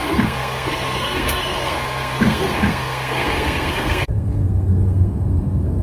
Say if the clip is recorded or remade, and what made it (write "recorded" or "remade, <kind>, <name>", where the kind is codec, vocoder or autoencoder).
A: remade, codec, SNAC